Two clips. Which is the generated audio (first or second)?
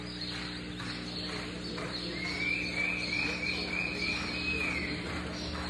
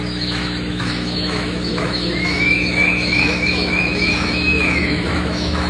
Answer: second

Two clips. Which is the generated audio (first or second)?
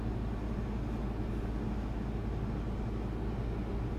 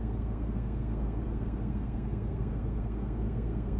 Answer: second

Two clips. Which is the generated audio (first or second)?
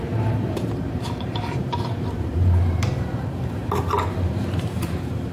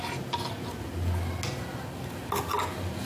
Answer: first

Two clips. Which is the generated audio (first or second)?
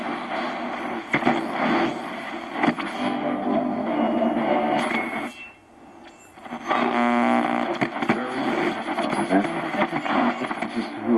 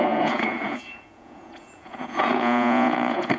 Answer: second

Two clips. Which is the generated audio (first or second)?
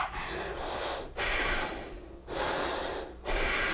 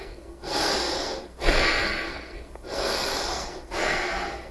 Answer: second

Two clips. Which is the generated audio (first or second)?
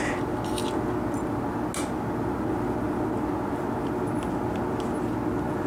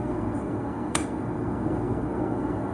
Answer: second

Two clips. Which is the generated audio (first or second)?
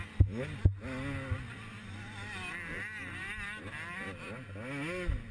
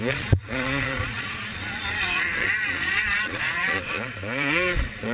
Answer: second